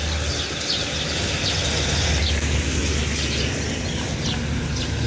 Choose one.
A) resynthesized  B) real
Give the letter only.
B